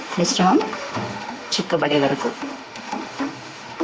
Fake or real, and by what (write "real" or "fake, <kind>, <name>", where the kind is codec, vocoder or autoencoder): fake, autoencoder, DAC-VAE